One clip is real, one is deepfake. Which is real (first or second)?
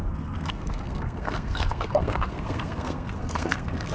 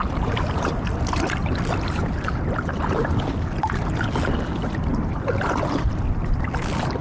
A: second